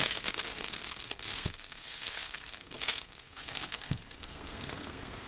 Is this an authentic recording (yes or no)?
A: no